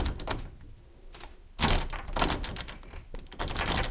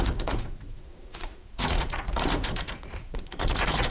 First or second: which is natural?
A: first